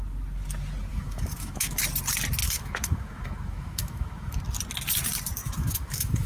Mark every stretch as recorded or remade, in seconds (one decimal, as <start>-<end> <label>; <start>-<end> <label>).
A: 0.0-0.9 recorded; 0.9-1.8 remade; 1.8-2.4 recorded; 2.4-4.4 remade; 4.4-5.4 recorded; 5.4-6.3 remade